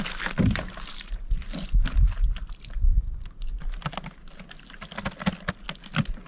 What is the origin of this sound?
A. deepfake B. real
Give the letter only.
B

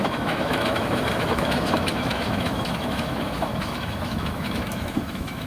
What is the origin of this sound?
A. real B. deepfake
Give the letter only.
B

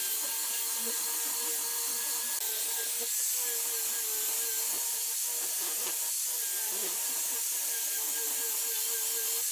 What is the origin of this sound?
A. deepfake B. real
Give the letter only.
B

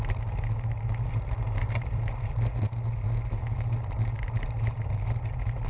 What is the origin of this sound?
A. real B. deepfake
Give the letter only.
A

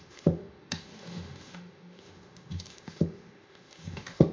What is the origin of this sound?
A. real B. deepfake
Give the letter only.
B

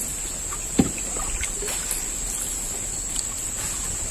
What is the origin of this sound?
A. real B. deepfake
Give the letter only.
A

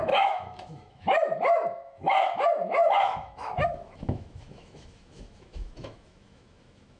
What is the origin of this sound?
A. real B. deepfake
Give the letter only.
B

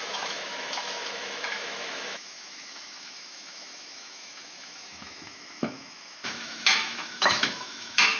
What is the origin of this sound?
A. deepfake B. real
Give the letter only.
A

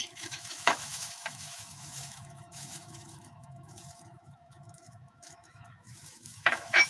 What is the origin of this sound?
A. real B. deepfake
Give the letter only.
B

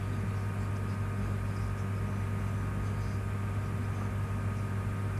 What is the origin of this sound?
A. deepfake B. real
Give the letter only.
B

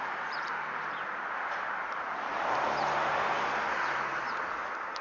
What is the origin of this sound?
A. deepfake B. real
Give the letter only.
B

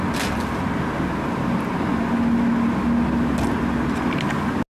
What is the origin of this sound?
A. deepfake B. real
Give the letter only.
B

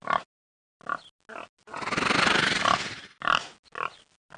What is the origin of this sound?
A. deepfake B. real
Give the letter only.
B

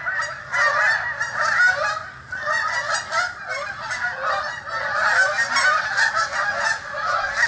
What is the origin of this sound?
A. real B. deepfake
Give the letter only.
A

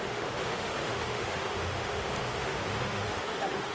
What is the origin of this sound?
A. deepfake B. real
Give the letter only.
A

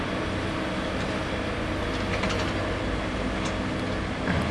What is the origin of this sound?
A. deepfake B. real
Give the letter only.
B